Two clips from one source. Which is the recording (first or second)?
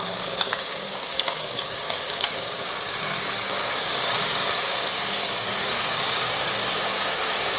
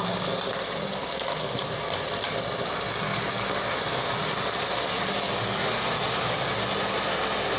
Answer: second